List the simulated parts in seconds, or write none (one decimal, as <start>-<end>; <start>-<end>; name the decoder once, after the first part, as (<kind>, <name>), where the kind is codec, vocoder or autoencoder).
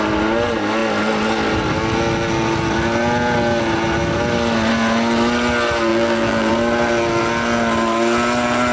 5.9-6.5 (vocoder, BigVGAN v2)